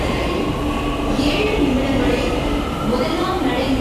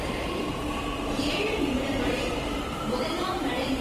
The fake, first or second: second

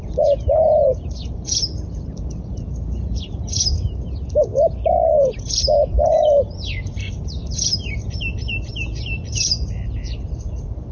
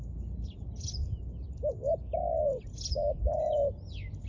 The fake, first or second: first